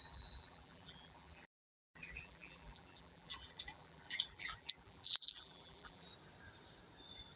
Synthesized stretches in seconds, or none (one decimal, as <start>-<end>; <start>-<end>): 0.0-6.1